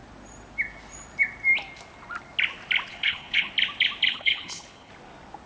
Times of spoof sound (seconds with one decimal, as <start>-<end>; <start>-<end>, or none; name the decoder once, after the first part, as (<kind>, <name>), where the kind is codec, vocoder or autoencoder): 2.9-3.5 (codec, HILCodec); 4.1-4.9